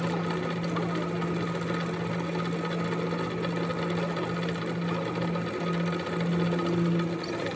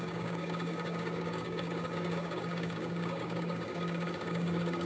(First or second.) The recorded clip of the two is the first